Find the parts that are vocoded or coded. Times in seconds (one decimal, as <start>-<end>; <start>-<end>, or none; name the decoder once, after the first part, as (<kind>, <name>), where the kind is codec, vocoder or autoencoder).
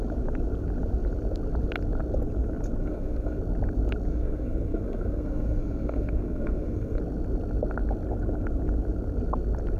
2.8-3.4 (codec, SNAC); 4.1-7.0